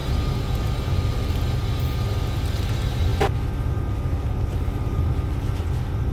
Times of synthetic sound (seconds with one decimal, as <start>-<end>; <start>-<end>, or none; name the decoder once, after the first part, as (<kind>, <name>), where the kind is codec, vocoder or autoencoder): none